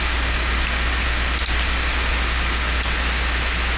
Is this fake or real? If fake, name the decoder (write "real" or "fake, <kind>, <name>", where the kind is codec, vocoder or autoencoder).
real